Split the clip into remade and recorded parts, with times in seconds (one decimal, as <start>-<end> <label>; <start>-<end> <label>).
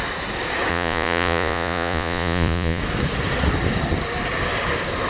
0.0-0.7 recorded; 0.7-2.8 remade; 2.8-5.1 recorded